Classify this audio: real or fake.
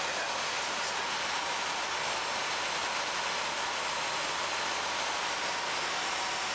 real